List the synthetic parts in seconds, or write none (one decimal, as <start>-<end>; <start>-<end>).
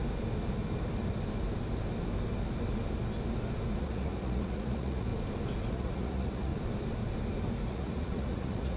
3.8-5.1; 5.7-6.5; 7.7-8.8